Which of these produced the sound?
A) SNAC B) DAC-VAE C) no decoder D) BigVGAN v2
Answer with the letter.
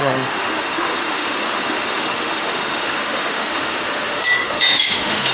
B